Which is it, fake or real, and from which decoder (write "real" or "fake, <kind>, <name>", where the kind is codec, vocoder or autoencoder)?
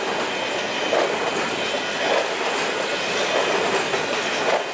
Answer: real